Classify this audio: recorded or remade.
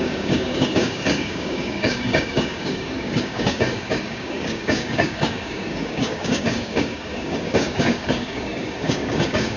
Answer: remade